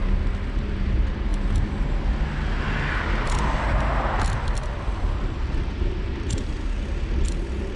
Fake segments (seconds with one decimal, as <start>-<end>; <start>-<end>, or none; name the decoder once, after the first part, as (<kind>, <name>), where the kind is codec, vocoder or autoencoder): none